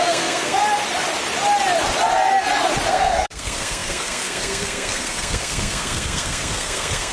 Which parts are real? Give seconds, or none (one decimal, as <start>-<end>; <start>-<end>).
0.6-2.9